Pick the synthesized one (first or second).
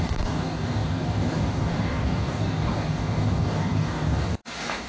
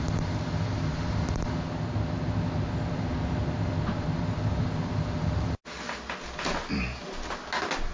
first